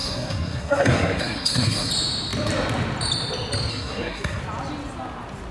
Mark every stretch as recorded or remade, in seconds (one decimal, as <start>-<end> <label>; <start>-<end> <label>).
0.0-1.9 remade; 1.9-3.7 recorded; 3.7-4.4 remade; 4.4-5.5 recorded